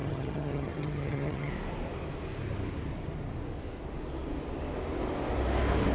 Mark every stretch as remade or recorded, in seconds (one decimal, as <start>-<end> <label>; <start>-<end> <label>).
0.0-1.5 remade; 1.5-5.9 recorded